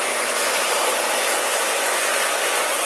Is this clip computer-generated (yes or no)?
yes